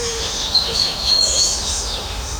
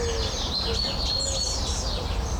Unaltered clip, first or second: second